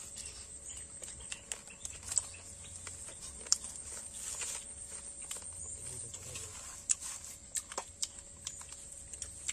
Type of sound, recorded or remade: recorded